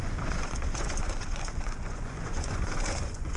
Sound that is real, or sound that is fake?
fake